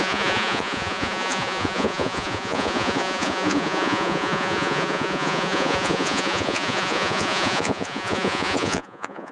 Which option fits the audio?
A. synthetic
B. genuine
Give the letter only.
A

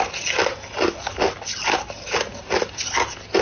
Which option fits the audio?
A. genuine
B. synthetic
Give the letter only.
A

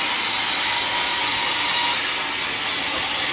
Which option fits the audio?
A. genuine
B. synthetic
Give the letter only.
A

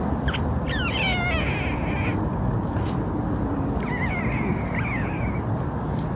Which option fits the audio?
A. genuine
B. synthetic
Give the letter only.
A